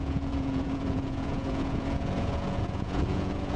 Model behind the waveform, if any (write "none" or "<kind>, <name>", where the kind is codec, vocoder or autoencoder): vocoder, Vocos